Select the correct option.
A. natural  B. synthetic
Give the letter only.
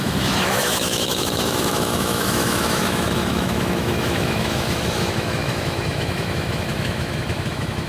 B